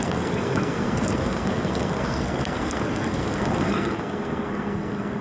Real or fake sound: fake